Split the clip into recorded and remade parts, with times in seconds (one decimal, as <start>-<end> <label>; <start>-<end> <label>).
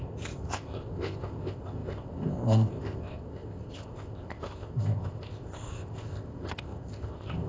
0.0-7.5 remade